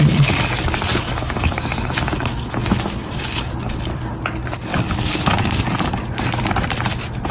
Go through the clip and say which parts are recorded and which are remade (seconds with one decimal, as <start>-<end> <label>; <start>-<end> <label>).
0.0-0.9 recorded; 0.9-3.7 remade; 3.7-4.7 recorded; 4.7-5.3 remade; 5.3-7.3 recorded